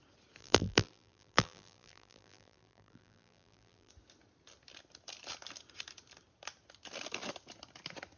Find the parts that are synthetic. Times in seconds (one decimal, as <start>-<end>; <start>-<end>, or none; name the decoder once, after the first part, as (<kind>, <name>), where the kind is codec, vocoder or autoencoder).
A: 0.4-3.9 (vocoder, BigVGAN v2)